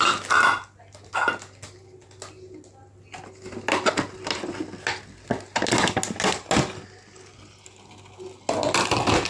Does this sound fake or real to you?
real